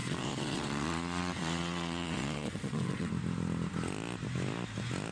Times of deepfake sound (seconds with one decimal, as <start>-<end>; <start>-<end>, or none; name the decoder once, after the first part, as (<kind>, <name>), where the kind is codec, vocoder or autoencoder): 0.0-3.1 (vocoder, WaveNeXt)